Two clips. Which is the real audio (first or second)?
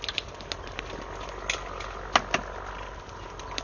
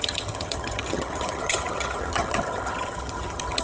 first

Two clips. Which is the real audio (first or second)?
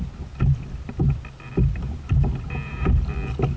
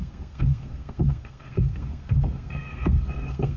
first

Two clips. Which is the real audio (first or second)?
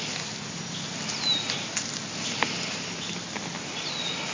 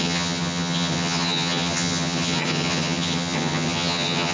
first